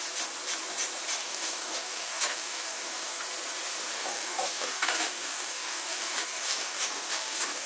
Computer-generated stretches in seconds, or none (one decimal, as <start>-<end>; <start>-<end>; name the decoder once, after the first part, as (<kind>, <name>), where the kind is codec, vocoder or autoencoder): 1.2-3.2 (codec, DAC); 3.9-7.7